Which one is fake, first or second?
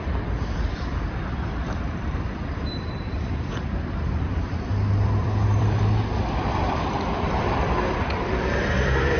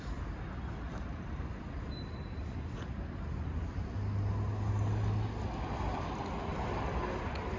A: first